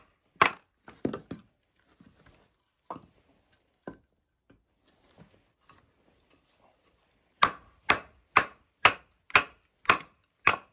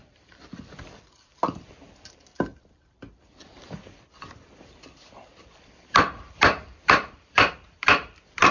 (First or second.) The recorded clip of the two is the first